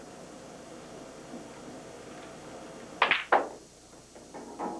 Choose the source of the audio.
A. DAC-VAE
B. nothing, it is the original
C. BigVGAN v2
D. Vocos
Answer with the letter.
B